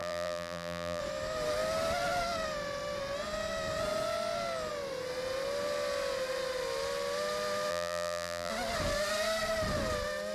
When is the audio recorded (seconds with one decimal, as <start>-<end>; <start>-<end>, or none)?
1.0-7.7; 8.5-10.3